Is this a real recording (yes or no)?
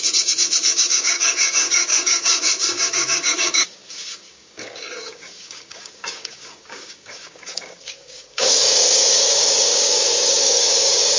no